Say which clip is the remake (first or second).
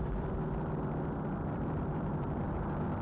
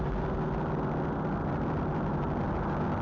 first